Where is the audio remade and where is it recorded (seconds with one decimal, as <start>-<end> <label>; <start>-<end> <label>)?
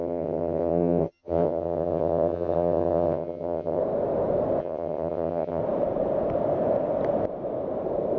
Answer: 0.0-3.8 remade; 3.8-4.6 recorded; 4.6-5.6 remade; 5.6-8.2 recorded